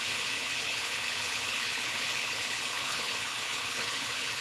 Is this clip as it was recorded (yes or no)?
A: no